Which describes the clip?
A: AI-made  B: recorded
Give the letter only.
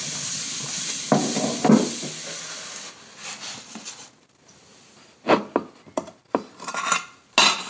B